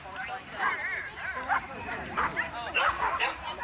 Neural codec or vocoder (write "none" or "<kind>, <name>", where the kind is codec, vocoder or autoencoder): vocoder, BigVGAN v2